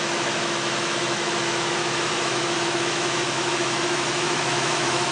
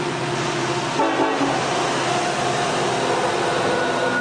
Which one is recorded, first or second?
second